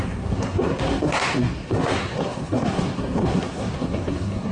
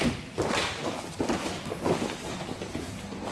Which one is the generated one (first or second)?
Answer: first